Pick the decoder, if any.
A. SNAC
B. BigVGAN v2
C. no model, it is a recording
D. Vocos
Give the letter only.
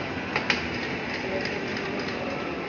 C